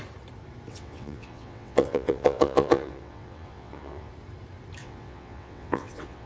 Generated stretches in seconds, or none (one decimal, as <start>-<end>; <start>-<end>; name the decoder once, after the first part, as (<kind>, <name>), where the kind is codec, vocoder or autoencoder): 0.7-4.1 (vocoder, WaveNeXt); 4.8-6.3

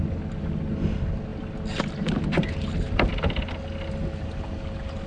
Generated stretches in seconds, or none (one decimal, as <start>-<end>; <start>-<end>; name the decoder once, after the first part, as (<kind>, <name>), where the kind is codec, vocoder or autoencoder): none